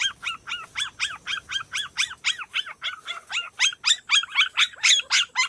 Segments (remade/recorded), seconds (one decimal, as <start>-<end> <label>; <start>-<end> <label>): 0.0-5.5 recorded